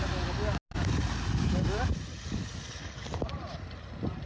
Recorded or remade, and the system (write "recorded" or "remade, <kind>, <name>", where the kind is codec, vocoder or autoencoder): recorded